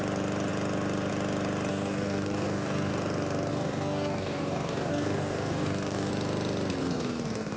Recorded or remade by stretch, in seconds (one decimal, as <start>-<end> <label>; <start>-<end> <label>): 0.0-1.7 recorded; 1.7-2.9 remade; 2.9-3.5 recorded; 3.5-6.1 remade; 6.1-6.8 recorded; 6.8-7.6 remade

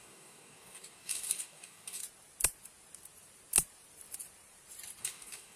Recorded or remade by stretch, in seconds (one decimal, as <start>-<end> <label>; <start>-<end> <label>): 0.0-2.0 remade; 2.0-5.0 recorded; 5.0-5.6 remade

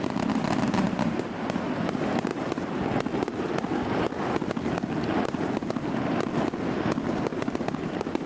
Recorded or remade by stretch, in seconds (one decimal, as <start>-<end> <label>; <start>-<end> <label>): 0.0-8.3 recorded

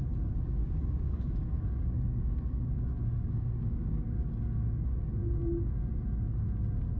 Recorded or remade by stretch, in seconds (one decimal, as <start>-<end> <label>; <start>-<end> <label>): 0.0-0.6 recorded; 0.6-4.8 remade; 4.8-5.2 recorded; 5.2-5.8 remade; 5.8-7.0 recorded

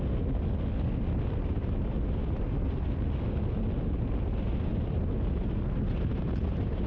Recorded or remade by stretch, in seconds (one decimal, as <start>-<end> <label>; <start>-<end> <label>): 0.0-6.9 recorded

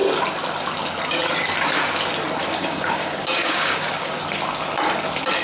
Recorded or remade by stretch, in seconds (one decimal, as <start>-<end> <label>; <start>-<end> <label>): 0.0-2.4 recorded; 2.4-4.1 remade; 4.1-5.4 recorded

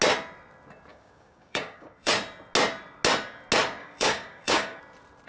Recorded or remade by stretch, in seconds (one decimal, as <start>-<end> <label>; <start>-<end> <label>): 0.0-0.9 recorded; 0.9-2.1 remade; 2.1-3.8 recorded; 3.8-4.8 remade; 4.8-5.3 recorded